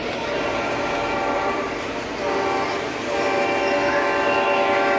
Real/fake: real